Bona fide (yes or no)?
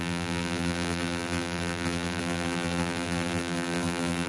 no